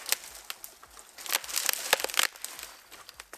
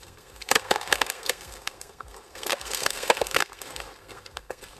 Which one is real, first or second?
first